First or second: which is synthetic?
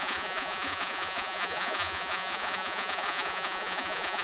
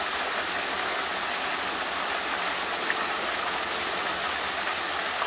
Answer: first